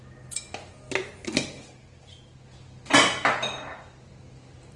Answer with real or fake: real